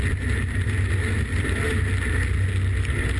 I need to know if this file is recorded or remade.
recorded